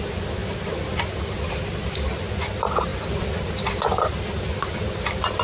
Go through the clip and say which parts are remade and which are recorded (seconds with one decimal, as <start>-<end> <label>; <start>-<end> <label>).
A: 0.0-5.4 recorded